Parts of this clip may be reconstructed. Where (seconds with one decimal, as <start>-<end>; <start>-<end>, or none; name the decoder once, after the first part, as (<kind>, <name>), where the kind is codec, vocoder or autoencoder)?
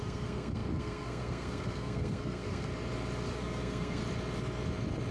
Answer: 0.0-2.7 (codec, SNAC); 3.3-4.0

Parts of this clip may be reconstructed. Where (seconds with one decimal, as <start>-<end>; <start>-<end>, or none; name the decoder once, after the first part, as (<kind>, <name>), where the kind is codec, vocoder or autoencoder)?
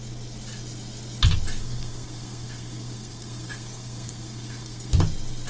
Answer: 1.6-4.9 (codec, SNAC)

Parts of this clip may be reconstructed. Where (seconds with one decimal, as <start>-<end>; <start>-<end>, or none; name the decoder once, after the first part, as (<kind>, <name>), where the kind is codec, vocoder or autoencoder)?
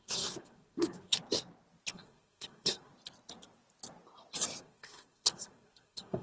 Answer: 0.0-1.1 (codec, SNAC); 1.9-2.9; 4.6-6.2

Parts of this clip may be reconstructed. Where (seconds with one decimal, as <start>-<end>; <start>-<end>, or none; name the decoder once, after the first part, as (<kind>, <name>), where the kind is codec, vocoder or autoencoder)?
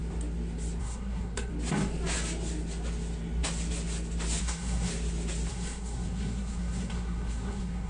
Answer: 0.8-1.5 (codec, SNAC); 4.4-4.9; 5.5-7.9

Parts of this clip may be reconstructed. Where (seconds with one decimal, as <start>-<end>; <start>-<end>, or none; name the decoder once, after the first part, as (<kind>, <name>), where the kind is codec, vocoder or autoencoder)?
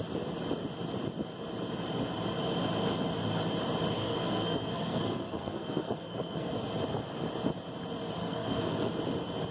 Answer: 4.0-6.5 (codec, SNAC); 8.2-8.9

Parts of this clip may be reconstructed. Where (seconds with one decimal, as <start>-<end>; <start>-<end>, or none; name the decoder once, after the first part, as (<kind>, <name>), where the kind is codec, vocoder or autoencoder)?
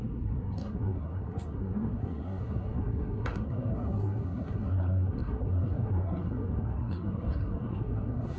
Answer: 0.0-8.4 (codec, SNAC)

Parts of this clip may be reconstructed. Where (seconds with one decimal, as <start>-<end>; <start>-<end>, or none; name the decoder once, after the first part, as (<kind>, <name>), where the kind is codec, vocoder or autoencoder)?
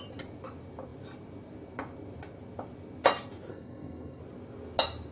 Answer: 3.5-4.2 (codec, SNAC)